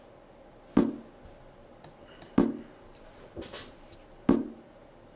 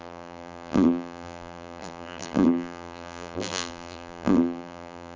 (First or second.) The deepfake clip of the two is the second